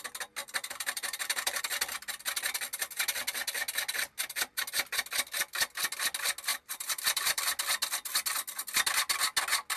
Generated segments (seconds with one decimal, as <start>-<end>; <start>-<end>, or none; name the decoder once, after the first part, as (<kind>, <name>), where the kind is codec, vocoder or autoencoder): 0.4-1.6 (vocoder, BigVGAN v2); 6.5-7.4